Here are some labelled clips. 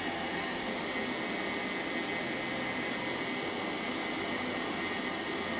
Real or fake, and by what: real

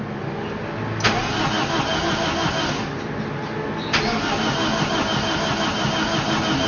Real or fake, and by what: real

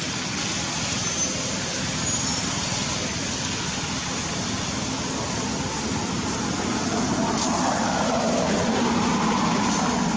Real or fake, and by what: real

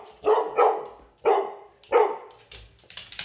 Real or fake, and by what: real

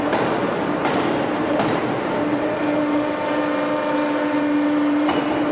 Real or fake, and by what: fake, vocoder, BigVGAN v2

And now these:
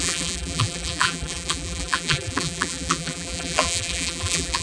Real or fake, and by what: fake, vocoder, BigVGAN v2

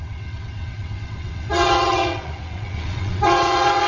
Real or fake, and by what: fake, vocoder, WaveNeXt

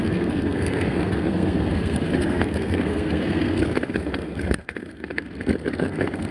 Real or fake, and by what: fake, codec, SNAC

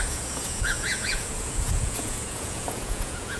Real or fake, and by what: fake, vocoder, Vocos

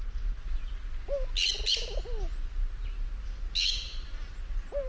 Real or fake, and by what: real